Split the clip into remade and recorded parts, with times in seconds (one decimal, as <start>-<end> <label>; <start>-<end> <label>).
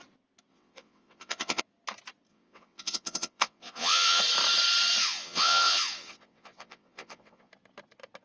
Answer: 0.0-0.5 recorded; 0.5-1.6 remade; 1.6-2.3 recorded; 2.3-4.2 remade; 4.2-5.0 recorded; 5.0-7.5 remade; 7.5-8.2 recorded